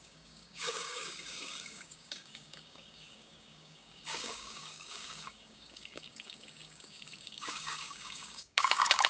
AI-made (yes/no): yes